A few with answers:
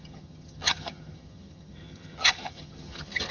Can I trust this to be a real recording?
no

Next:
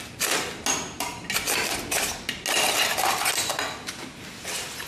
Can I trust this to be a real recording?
yes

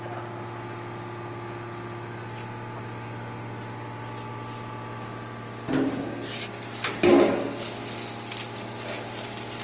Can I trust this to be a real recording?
yes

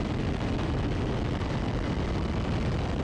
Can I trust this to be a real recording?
yes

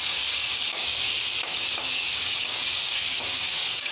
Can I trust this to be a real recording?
no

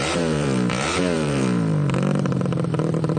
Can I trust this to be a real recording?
no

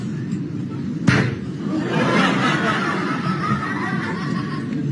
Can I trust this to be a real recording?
yes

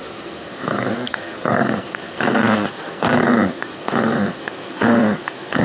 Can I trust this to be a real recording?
no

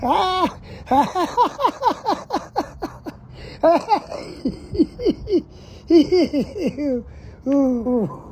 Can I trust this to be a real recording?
yes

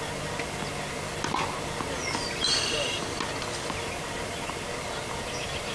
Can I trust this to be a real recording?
yes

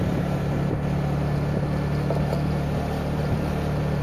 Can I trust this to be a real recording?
yes